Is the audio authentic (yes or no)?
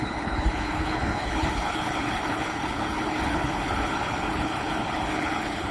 no